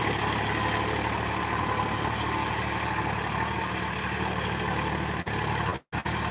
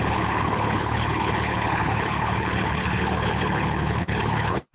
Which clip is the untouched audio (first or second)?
first